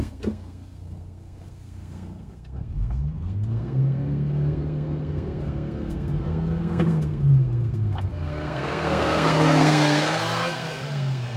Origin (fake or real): fake